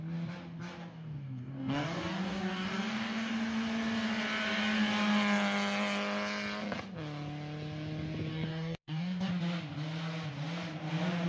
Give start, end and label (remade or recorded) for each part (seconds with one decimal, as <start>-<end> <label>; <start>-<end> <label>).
0.0-0.8 recorded; 0.8-3.3 remade; 3.3-8.3 recorded; 8.3-9.3 remade; 9.3-11.3 recorded